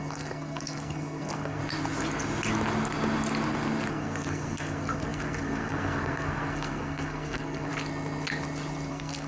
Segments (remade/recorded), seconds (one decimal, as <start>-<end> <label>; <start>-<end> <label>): 0.0-1.6 remade; 1.6-3.9 recorded; 3.9-7.7 remade; 7.7-8.9 recorded; 8.9-9.3 remade